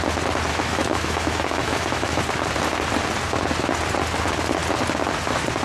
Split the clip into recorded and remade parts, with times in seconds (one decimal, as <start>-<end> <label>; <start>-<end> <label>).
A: 0.0-0.5 recorded; 0.5-2.2 remade; 2.2-5.6 recorded